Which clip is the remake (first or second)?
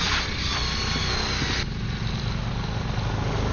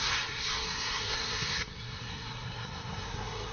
second